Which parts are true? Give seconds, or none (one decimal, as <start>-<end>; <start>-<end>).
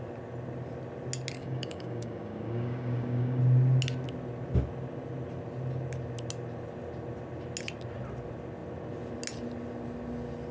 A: 0.0-1.4; 3.4-10.5